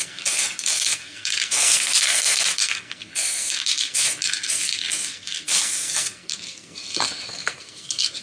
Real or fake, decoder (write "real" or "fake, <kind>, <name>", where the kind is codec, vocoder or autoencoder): fake, codec, SNAC